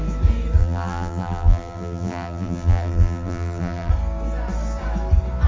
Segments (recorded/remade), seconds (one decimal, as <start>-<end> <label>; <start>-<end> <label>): 0.0-0.6 recorded; 0.6-3.9 remade; 3.9-5.5 recorded